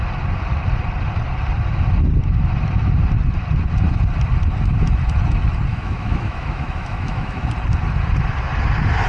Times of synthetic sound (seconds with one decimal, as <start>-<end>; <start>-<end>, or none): 5.7-7.5